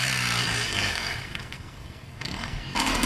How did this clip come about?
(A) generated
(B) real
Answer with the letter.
A